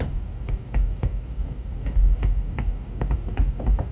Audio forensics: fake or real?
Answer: fake